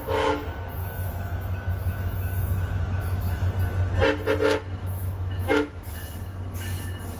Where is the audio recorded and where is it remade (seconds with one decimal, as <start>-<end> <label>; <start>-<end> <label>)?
0.0-0.8 recorded; 0.8-3.5 remade; 3.5-4.8 recorded; 4.8-5.9 remade; 5.9-7.2 recorded